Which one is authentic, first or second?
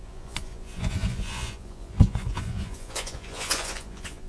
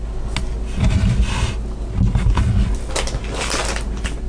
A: second